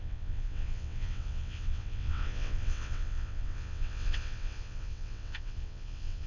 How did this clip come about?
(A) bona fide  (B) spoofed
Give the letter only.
B